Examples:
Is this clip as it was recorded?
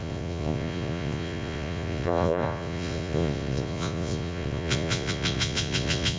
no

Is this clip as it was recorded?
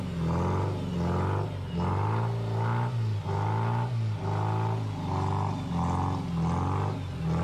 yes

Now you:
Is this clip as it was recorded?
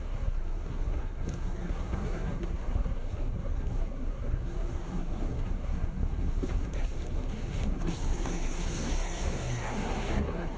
no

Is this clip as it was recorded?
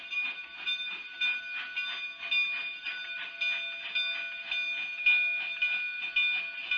yes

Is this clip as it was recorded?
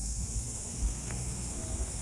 no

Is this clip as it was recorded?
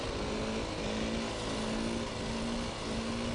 yes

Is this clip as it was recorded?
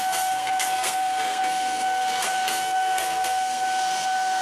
no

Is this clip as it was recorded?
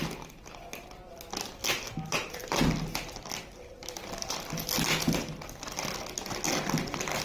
yes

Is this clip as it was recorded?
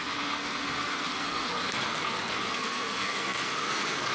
no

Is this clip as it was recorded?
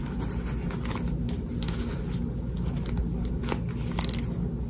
yes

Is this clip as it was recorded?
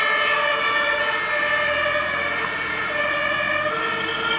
yes